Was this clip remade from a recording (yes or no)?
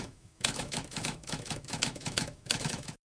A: yes